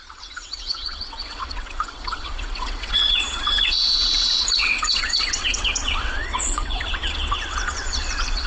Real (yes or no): no